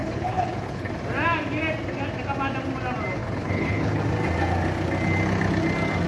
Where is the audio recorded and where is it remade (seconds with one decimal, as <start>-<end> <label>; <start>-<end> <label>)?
0.0-0.9 remade; 0.9-3.2 recorded; 3.2-4.0 remade; 4.0-6.1 recorded